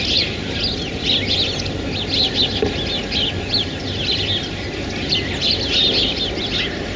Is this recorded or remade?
recorded